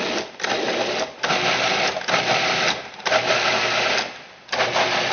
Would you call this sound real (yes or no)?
yes